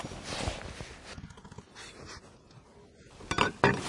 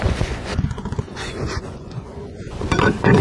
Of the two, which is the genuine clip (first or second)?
first